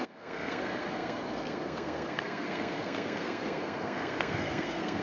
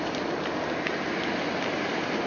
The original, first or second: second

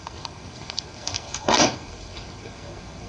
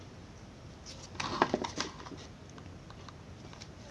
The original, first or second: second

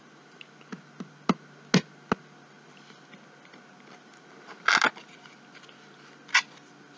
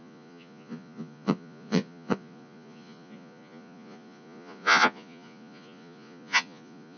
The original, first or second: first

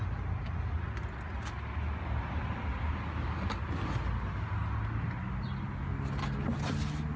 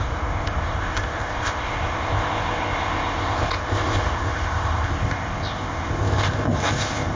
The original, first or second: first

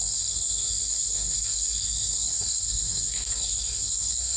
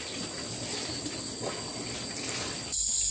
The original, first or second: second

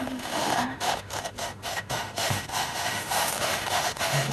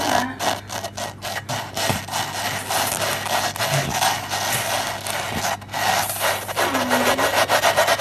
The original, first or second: second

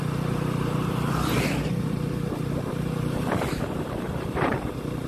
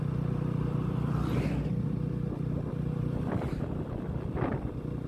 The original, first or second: second